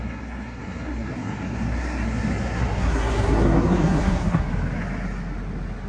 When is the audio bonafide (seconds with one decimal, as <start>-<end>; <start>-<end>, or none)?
4.5-5.9